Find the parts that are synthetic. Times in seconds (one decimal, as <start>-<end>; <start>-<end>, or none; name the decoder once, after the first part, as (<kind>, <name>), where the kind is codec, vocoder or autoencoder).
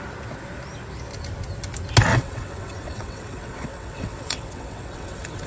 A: 2.1-5.5 (vocoder, WaveNeXt)